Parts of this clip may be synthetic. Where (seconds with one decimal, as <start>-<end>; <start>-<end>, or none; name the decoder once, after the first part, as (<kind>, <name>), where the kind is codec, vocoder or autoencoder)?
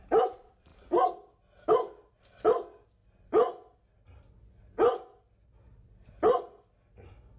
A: none